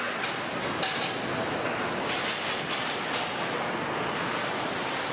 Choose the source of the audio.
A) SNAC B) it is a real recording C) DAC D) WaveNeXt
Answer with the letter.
B